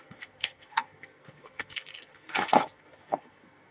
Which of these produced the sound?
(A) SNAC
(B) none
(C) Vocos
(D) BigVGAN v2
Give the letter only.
A